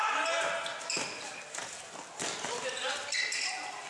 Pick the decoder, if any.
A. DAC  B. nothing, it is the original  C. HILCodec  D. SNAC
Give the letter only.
B